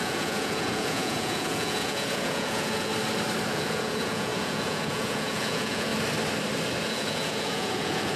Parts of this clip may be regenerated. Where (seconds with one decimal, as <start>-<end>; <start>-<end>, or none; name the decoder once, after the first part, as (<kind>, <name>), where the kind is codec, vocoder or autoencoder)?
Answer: 0.0-2.9 (vocoder, Vocos); 3.5-5.9; 6.8-8.2